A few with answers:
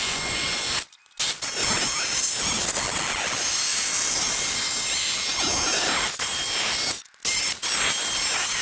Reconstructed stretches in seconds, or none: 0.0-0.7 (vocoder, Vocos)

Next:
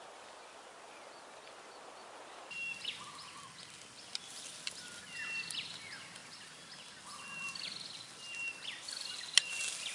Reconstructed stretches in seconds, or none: none

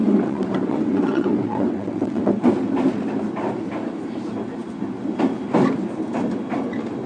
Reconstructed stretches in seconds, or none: 0.0-2.5 (vocoder, WaveNeXt)

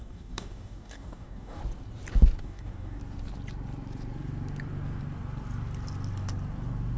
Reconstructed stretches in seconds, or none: 0.0-1.6 (codec, DAC); 2.4-3.0

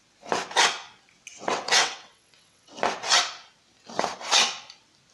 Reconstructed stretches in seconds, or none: 1.3-2.8 (vocoder, WaveNeXt)

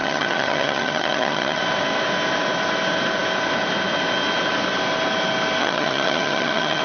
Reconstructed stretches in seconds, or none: 0.0-1.6 (vocoder, HiFi-GAN); 5.6-6.8

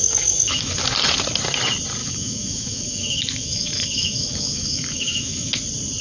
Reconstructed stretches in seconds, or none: 0.0-0.7 (autoencoder, DAC-VAE); 2.0-5.5

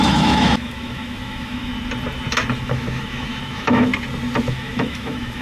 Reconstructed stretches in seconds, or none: 0.0-1.7 (autoencoder, DAC-VAE); 2.6-3.9; 4.4-5.4